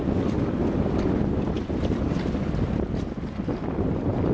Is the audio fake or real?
real